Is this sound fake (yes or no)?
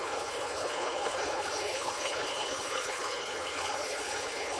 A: yes